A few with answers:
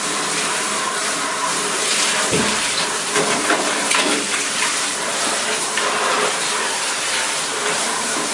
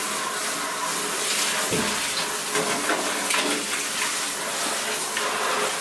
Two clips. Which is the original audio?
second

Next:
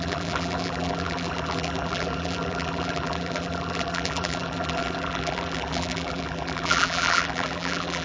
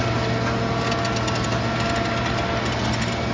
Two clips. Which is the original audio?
second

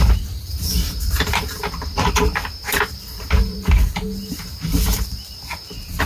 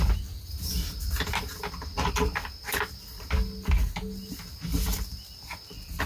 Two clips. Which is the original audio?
second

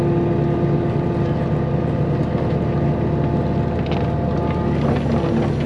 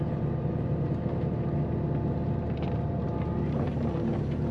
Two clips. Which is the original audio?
first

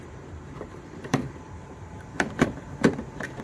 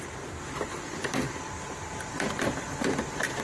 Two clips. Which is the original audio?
second